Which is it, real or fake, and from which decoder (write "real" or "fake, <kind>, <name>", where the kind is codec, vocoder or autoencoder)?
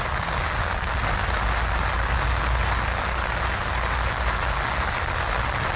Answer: real